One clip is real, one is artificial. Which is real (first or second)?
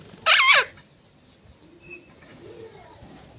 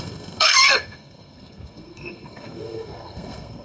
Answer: first